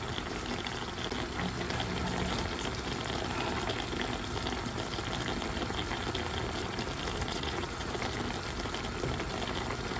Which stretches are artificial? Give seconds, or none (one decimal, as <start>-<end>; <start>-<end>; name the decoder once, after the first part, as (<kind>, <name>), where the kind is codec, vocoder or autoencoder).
7.3-7.9 (vocoder, Vocos)